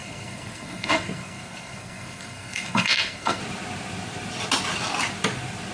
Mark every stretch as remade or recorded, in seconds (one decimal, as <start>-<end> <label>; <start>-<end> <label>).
0.0-3.4 remade; 3.4-5.7 recorded